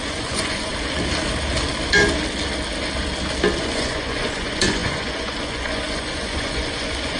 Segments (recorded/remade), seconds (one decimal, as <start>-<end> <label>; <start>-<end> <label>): 0.0-0.7 remade; 0.7-3.6 recorded; 3.6-7.2 remade